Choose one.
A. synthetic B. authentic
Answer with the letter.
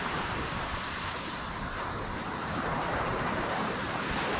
A